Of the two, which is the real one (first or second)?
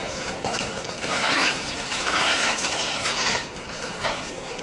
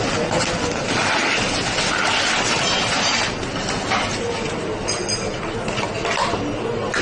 second